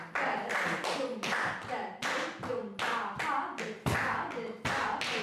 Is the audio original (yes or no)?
yes